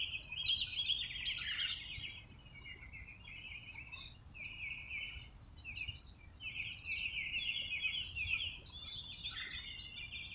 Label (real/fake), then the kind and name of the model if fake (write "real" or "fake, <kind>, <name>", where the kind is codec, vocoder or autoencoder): real